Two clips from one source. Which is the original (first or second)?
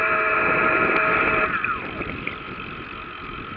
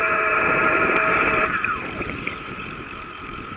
first